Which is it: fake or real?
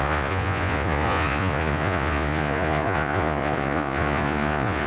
fake